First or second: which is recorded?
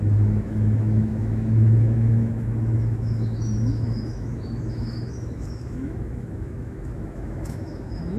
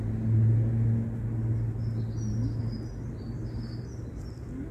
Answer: second